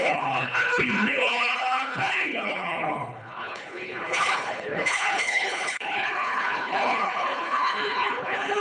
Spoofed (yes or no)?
yes